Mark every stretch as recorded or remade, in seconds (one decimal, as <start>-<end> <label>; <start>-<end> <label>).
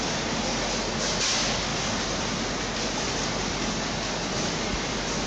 0.0-5.3 recorded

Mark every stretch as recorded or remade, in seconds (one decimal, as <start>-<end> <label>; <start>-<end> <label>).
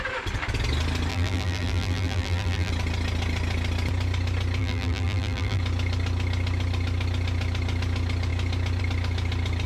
0.0-1.1 recorded; 1.1-2.7 remade; 2.7-4.6 recorded; 4.6-5.6 remade; 5.6-9.7 recorded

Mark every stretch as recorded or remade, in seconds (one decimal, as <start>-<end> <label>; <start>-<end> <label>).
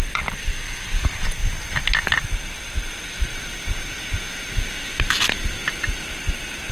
0.0-1.4 remade; 1.4-2.2 recorded; 2.2-3.3 remade; 3.3-6.0 recorded; 6.0-6.7 remade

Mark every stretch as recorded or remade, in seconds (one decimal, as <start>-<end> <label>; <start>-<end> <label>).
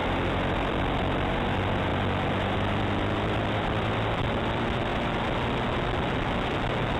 0.0-0.8 remade; 0.8-7.0 recorded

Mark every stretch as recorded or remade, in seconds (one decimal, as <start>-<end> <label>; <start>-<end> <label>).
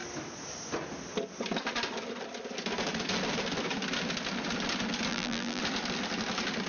0.0-5.1 recorded; 5.1-5.6 remade; 5.6-6.7 recorded